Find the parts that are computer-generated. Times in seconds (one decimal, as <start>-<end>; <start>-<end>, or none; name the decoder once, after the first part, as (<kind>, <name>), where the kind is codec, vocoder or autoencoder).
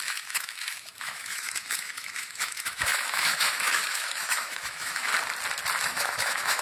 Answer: 0.0-5.1 (autoencoder, DAC-VAE); 5.8-6.6